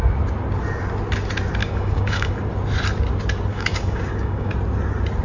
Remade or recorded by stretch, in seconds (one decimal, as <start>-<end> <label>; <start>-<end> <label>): 0.0-1.6 recorded; 1.6-2.3 remade; 2.3-3.5 recorded; 3.5-4.5 remade; 4.5-5.2 recorded